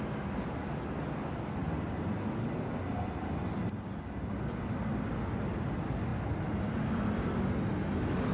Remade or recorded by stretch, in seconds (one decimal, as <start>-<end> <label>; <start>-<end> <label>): 0.0-8.3 recorded

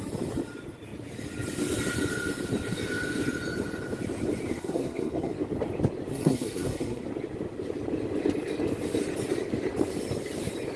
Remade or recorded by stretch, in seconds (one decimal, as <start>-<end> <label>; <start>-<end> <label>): 0.0-4.5 recorded; 4.5-5.3 remade; 5.3-6.1 recorded; 6.1-7.0 remade; 7.0-10.8 recorded